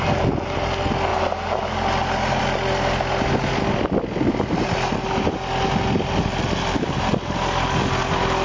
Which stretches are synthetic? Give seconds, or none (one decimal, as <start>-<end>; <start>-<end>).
none